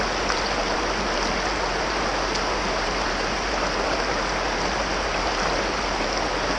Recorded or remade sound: recorded